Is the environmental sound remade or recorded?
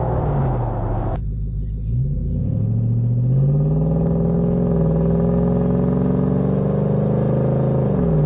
recorded